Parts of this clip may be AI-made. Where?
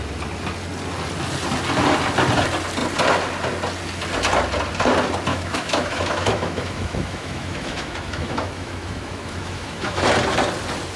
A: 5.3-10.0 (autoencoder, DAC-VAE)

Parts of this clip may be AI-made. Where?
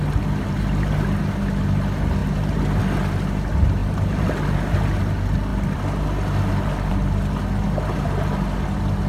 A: none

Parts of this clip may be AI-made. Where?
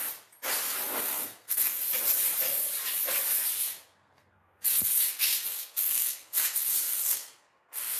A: 1.0-1.8 (codec, SNAC); 3.8-8.0